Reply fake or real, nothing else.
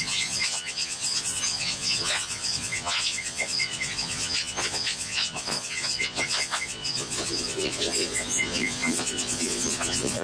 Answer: fake